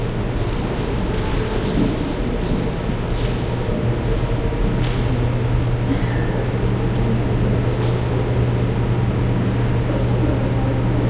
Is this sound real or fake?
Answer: real